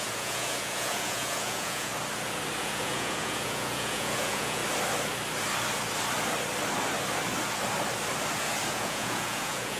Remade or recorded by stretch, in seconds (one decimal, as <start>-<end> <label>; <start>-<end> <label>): 0.0-1.9 remade; 1.9-2.6 recorded; 2.6-4.6 remade; 4.6-8.7 recorded; 8.7-9.8 remade